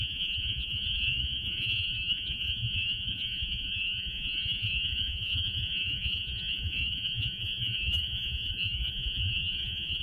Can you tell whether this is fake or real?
fake